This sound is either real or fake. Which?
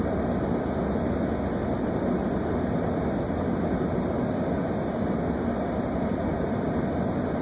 real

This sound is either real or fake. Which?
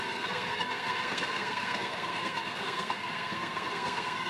fake